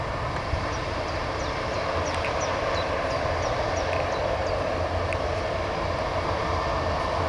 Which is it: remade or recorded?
recorded